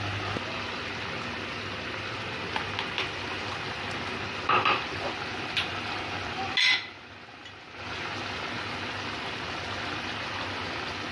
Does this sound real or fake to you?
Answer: real